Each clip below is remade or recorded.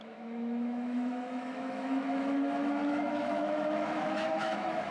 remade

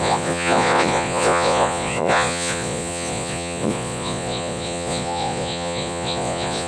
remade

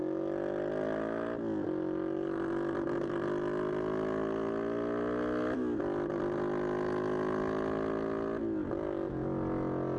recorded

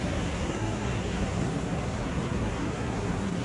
remade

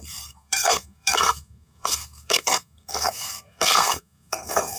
remade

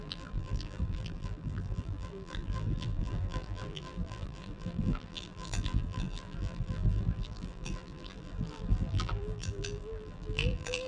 remade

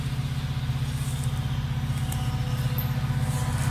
recorded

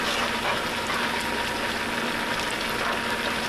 recorded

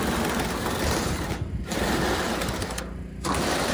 recorded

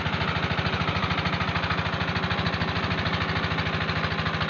recorded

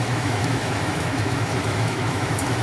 remade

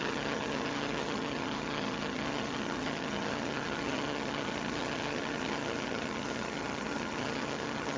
remade